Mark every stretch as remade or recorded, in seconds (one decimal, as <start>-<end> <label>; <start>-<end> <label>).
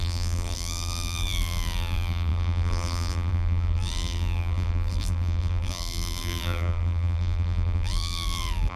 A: 0.0-8.8 remade